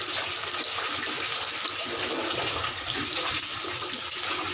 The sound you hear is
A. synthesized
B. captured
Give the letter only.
B